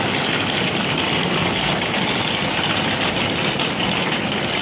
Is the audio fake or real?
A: real